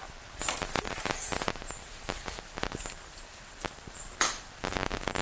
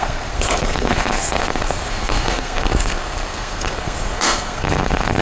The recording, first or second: first